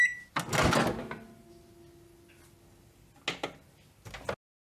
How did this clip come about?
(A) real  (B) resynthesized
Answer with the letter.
A